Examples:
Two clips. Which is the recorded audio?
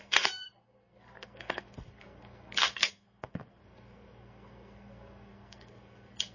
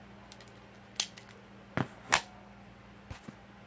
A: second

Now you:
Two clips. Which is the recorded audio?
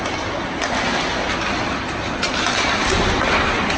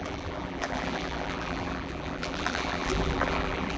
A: first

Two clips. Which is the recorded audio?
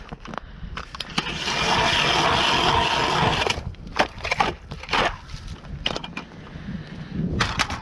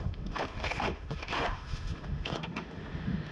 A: first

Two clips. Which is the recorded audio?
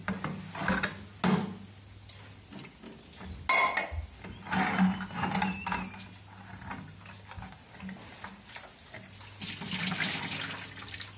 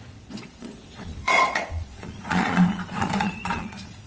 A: first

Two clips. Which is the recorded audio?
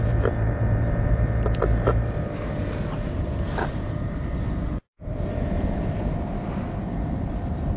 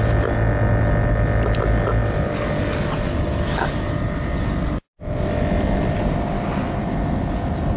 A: second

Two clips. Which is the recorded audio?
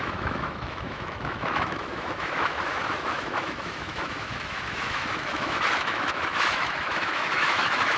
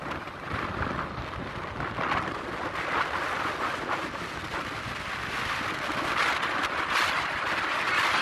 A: second